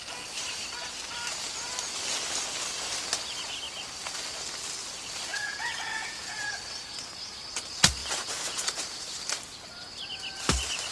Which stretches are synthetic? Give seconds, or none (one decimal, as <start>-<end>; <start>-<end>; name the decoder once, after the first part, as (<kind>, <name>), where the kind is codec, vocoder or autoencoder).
5.3-6.5 (vocoder, Vocos); 8.0-9.0